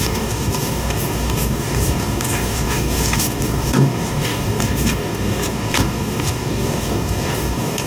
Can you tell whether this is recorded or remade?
remade